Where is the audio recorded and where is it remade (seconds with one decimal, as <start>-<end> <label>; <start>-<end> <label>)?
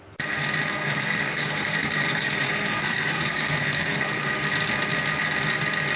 0.0-0.7 recorded; 0.7-4.3 remade; 4.3-6.0 recorded